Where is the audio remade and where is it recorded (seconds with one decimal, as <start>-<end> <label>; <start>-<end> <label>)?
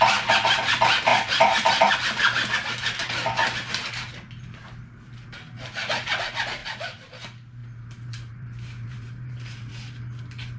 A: 0.0-1.1 recorded; 1.1-1.9 remade; 1.9-6.6 recorded; 6.6-7.1 remade; 7.1-7.6 recorded; 7.6-9.7 remade; 9.7-10.6 recorded